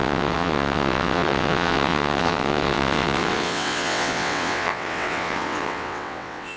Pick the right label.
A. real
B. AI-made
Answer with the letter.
B